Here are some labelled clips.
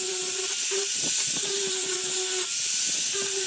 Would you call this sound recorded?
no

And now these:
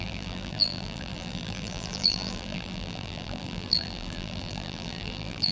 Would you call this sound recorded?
no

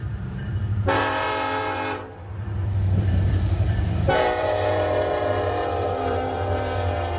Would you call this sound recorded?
no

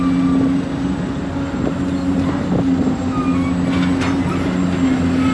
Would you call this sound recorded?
yes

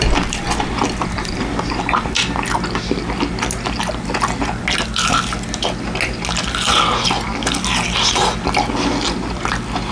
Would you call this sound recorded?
yes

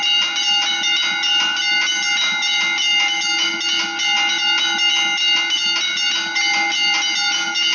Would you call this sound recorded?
yes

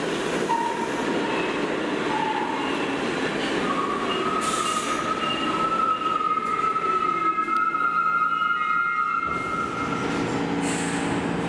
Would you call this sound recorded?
yes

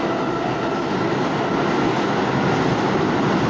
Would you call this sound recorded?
yes